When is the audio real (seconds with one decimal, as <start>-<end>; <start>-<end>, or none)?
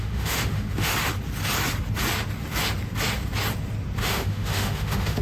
0.9-4.0